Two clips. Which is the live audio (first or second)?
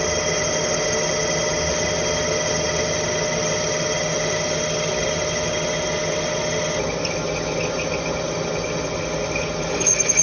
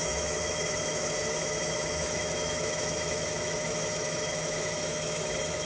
first